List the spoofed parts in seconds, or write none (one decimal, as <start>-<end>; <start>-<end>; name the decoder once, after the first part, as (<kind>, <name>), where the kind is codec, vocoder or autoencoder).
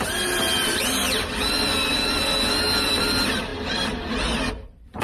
none